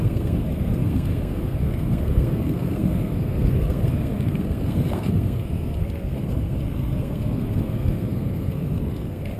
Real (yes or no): no